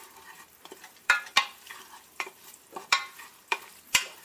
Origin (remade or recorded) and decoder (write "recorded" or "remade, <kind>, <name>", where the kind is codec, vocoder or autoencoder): remade, vocoder, BigVGAN v2